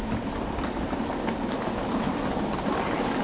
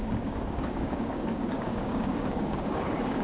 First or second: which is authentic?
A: first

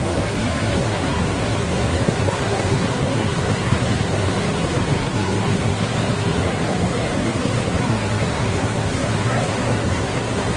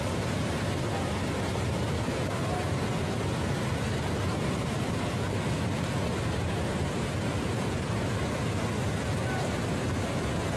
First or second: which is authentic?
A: second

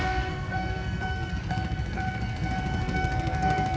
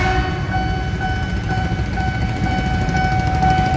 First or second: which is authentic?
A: second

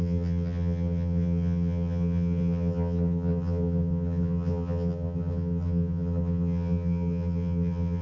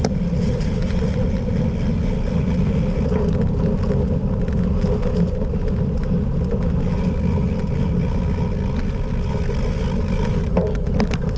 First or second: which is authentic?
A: second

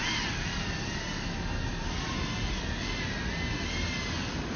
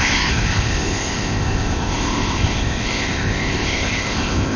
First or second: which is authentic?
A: first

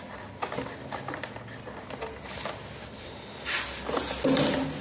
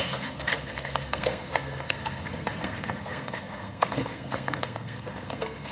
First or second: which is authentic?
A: first